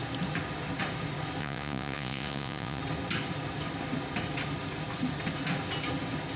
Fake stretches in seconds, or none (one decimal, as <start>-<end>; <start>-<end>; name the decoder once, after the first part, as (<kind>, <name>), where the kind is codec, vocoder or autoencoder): 1.4-2.8 (vocoder, Vocos)